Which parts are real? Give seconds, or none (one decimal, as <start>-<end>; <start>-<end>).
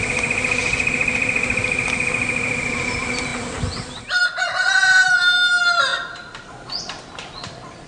0.0-7.9